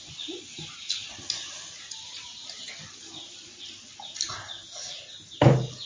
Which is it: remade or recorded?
recorded